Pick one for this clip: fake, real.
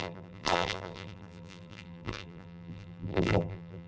fake